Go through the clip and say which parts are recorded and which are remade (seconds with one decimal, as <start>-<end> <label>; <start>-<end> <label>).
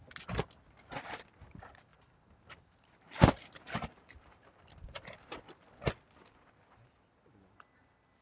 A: 0.0-1.9 recorded; 1.9-5.4 remade; 5.4-8.2 recorded